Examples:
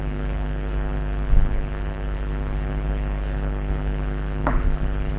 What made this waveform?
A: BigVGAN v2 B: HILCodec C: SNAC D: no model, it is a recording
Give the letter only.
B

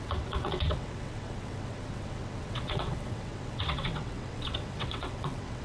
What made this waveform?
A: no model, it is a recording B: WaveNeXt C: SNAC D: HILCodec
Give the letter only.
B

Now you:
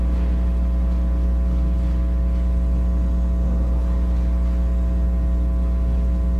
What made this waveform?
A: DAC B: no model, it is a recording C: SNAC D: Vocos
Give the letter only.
B